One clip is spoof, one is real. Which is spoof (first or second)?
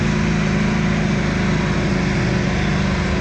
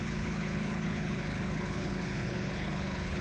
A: second